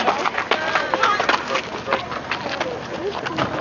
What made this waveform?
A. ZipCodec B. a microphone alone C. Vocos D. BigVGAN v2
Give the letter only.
B